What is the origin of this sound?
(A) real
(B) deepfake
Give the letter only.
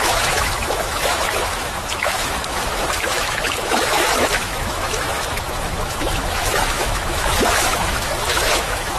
B